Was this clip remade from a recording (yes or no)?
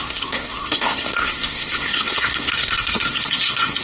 yes